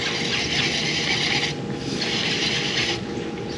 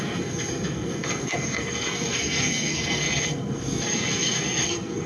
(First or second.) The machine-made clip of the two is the second